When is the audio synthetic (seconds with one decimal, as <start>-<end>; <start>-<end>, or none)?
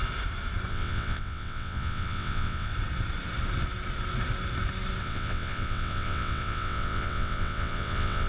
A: 0.7-2.7; 5.0-8.3